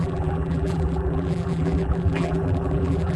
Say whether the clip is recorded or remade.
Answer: remade